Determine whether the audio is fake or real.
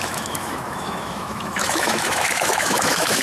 fake